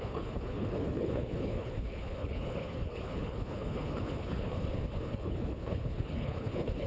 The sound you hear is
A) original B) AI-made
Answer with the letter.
B